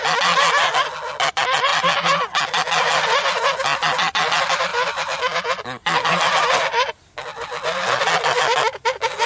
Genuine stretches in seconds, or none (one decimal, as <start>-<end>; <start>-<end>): 0.0-7.3; 8.1-9.3